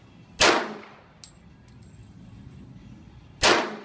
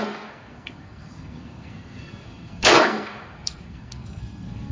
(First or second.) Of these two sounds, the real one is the first